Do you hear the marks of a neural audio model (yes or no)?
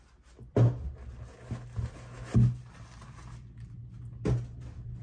no